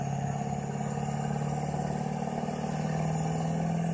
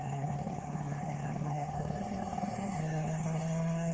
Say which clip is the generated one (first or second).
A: second